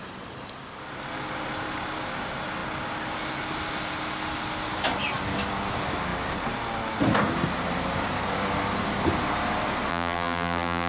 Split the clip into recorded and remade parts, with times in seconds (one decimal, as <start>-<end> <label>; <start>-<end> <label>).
0.0-9.9 recorded; 9.9-10.9 remade